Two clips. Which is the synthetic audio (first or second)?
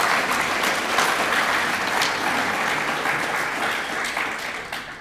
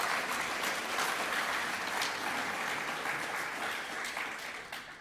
second